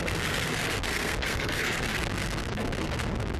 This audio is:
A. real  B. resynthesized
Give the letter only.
B